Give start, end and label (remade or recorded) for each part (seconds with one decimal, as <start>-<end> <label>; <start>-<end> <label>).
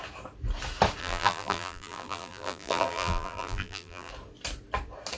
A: 0.0-1.0 recorded; 1.0-4.1 remade; 4.1-5.2 recorded